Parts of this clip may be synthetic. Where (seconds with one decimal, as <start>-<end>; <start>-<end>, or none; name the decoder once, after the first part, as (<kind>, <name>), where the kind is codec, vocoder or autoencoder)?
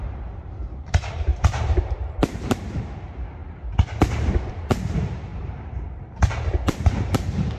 0.0-3.4 (vocoder, BigVGAN v2); 4.5-7.6